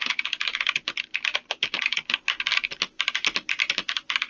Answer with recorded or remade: recorded